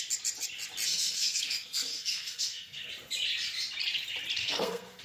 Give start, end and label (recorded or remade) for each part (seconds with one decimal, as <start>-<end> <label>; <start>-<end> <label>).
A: 0.0-0.9 recorded; 0.9-2.9 remade; 2.9-4.4 recorded; 4.4-5.0 remade